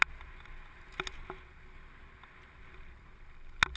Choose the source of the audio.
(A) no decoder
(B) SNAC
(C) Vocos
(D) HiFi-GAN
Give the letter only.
A